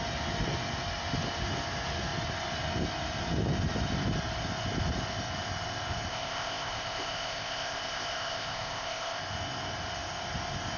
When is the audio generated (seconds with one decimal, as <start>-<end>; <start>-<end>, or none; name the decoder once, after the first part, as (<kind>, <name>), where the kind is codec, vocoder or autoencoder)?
6.1-9.2 (codec, ZipCodec)